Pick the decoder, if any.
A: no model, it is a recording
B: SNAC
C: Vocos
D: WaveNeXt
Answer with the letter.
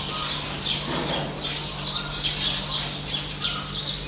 A